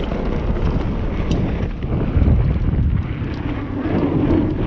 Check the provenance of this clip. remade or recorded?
recorded